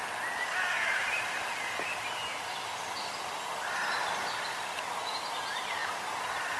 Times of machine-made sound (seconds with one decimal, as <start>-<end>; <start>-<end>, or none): none